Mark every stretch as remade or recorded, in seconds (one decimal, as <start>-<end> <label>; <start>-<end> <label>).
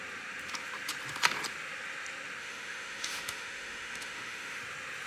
0.0-2.4 recorded; 2.4-4.6 remade; 4.6-5.1 recorded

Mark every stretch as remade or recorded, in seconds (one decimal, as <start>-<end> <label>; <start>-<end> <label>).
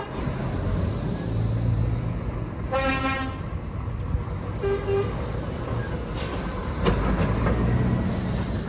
0.0-8.7 recorded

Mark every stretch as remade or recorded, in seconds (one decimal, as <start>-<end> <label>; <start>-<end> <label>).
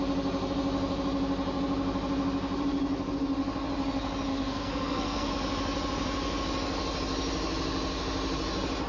0.0-4.3 recorded; 4.3-5.3 remade; 5.3-8.9 recorded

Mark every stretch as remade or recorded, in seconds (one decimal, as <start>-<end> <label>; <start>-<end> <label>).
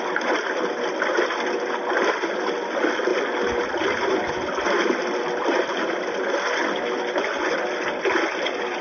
0.0-8.8 recorded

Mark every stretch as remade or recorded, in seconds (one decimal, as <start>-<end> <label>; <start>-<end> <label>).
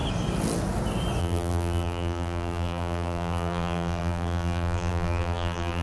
0.0-1.2 recorded; 1.2-5.8 remade